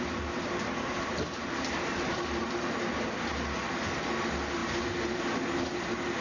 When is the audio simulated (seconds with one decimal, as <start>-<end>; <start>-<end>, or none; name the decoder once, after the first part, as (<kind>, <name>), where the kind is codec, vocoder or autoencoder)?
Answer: none